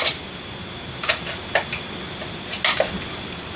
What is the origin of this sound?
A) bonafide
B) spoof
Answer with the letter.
A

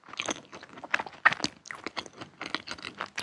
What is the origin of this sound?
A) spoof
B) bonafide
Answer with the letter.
B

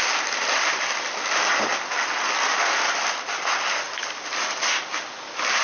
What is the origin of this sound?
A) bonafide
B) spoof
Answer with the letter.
A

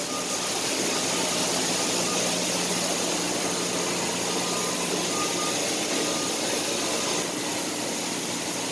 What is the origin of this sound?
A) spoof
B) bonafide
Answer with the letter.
B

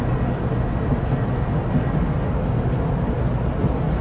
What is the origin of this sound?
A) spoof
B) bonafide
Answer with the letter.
B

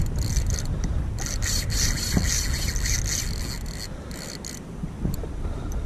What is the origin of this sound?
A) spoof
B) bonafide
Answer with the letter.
B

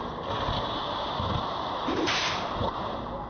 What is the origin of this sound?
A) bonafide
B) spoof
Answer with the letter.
A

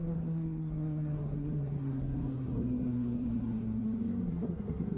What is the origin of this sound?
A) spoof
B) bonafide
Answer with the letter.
A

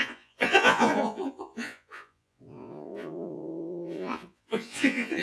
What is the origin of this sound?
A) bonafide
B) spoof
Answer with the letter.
B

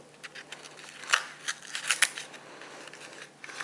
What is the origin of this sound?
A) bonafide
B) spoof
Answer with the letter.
A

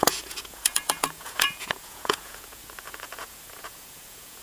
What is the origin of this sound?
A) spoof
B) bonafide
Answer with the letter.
A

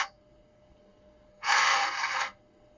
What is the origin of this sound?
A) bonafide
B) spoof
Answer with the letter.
B